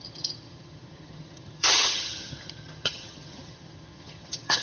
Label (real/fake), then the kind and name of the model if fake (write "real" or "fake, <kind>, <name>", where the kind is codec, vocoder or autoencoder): fake, vocoder, HiFi-GAN